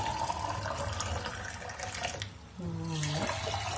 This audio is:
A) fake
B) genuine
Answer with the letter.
B